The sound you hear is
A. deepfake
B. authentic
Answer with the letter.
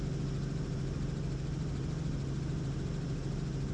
B